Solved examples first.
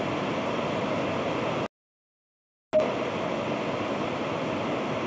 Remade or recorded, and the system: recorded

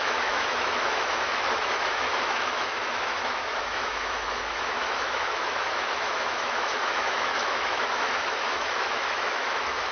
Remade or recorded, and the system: remade, autoencoder, DAC-VAE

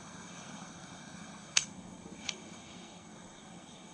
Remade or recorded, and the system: remade, codec, SNAC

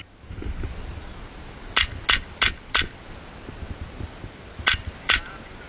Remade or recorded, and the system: recorded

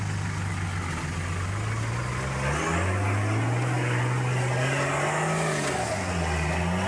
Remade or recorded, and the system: recorded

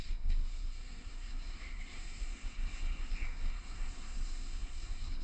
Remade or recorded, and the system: remade, codec, SNAC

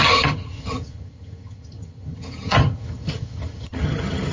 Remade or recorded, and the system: remade, vocoder, HiFi-GAN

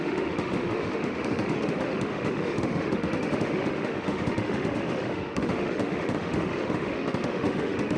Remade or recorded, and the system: remade, autoencoder, DAC-VAE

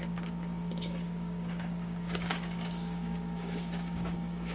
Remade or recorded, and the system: remade, codec, DAC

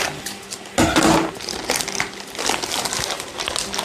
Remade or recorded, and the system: recorded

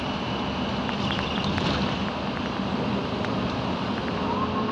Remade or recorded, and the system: remade, vocoder, BigVGAN v2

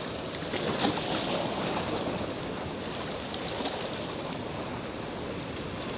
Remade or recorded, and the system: recorded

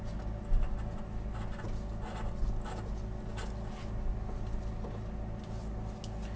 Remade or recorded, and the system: recorded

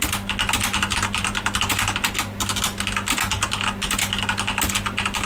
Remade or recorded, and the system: recorded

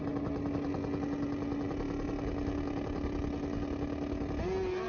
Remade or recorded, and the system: recorded